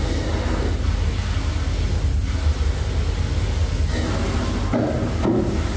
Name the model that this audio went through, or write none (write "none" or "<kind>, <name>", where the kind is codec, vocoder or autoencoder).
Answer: none